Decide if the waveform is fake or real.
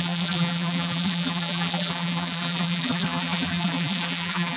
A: fake